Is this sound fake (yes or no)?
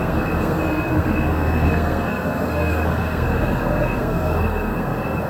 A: yes